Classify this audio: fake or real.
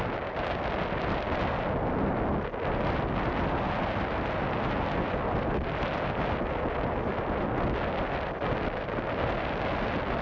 real